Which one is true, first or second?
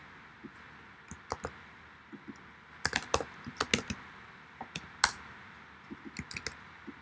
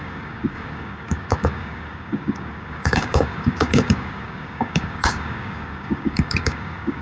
first